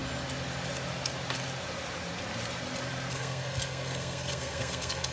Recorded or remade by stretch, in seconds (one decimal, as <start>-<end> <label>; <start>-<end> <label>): 0.0-3.1 recorded; 3.1-5.1 remade